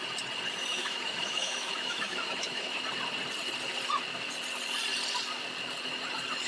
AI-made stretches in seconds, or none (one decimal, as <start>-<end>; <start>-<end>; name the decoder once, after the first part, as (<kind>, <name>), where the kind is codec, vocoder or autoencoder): 0.7-2.8 (autoencoder, DAC-VAE)